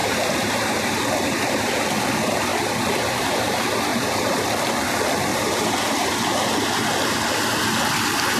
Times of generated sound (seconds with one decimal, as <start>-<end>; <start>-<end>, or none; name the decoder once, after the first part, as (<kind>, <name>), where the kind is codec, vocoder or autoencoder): 0.0-1.8 (vocoder, BigVGAN v2); 2.5-3.4; 3.9-4.4; 5.3-5.8